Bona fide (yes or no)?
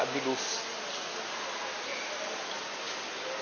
yes